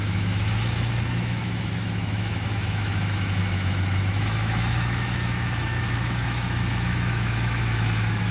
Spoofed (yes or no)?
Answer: yes